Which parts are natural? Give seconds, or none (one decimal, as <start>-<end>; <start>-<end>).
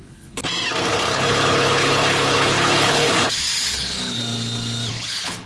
0.4-0.9; 4.2-4.9